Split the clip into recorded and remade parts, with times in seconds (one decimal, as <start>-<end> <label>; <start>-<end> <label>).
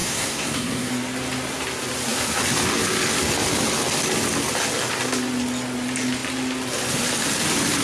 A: 0.0-0.9 remade; 0.9-7.8 recorded